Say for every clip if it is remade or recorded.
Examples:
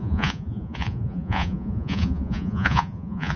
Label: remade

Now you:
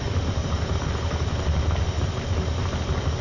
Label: recorded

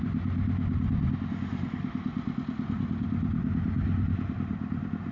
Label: recorded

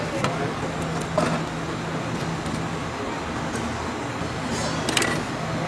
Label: recorded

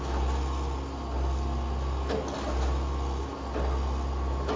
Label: recorded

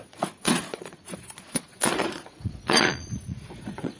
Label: remade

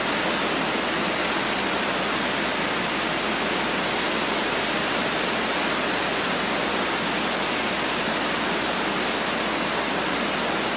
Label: recorded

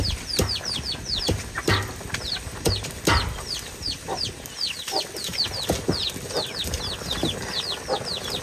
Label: recorded